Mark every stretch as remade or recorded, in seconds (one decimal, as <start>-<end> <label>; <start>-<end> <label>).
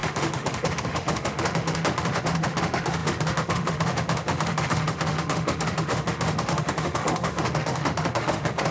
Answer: 0.0-8.7 remade